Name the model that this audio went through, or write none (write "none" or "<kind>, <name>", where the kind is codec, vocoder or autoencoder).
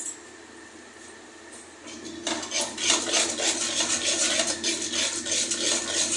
none